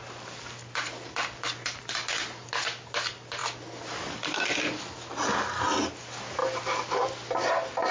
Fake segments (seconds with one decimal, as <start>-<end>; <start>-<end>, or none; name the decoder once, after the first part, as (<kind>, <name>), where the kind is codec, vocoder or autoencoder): none

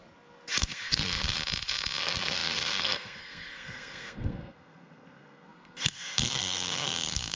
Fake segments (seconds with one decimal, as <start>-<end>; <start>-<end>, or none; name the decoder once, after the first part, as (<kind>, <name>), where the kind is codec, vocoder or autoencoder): 0.6-1.4 (codec, SNAC); 2.0-7.4

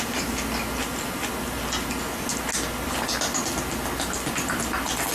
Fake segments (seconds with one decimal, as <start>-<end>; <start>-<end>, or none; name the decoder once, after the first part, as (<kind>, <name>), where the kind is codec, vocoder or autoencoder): none

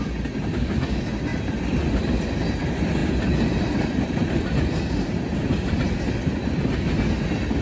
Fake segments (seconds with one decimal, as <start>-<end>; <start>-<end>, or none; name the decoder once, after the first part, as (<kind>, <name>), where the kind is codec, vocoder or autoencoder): none

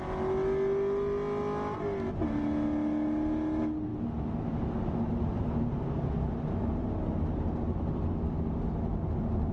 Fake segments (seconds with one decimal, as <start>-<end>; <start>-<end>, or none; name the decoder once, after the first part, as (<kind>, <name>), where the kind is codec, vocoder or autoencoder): none

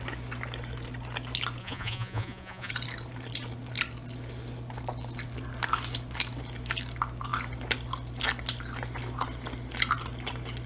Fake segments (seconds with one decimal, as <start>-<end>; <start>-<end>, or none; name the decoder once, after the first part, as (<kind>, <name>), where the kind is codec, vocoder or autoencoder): 1.6-2.7 (vocoder, Vocos)